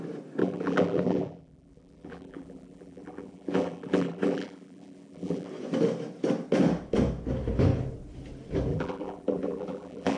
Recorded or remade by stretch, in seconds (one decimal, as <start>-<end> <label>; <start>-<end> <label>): 0.0-0.4 recorded; 0.4-5.5 remade; 5.5-8.7 recorded; 8.7-10.2 remade